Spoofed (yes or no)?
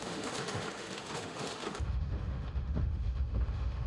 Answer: yes